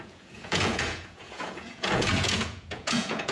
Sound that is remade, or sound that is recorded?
remade